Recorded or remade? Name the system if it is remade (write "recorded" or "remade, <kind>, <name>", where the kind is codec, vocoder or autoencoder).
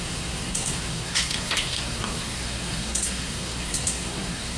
remade, codec, SNAC